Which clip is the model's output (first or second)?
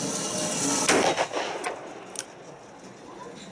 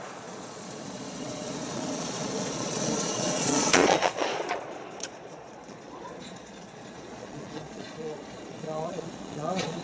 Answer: second